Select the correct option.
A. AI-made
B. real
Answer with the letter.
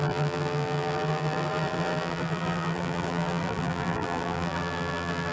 A